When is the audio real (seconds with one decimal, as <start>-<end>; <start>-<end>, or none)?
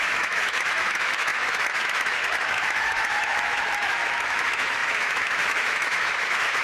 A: none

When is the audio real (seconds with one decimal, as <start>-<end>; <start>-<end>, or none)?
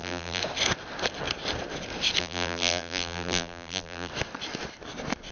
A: 0.4-2.2; 4.1-5.3